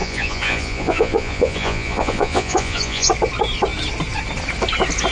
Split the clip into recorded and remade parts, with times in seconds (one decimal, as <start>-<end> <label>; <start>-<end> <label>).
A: 0.0-3.1 remade; 3.1-5.1 recorded